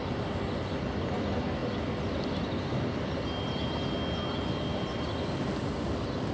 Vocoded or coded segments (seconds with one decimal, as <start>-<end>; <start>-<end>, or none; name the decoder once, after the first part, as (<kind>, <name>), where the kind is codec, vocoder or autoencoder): none